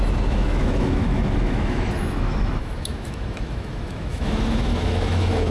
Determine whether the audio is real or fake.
fake